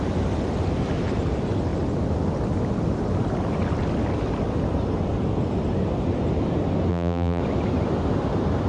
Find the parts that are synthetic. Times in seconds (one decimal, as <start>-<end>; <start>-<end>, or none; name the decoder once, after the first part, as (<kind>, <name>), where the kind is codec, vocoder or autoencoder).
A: 6.9-7.4 (vocoder, BigVGAN v2)